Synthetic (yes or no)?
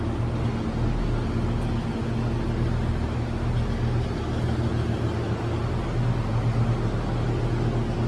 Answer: no